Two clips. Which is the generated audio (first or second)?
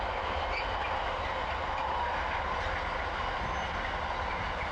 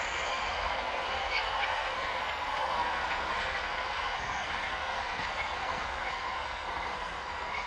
second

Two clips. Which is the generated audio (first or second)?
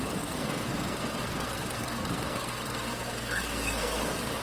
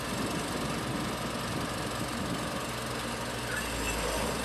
first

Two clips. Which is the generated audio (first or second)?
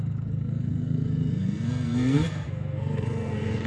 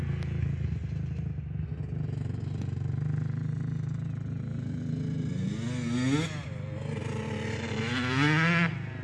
first